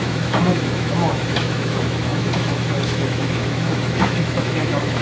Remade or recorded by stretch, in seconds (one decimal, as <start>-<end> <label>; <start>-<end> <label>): 0.0-5.0 remade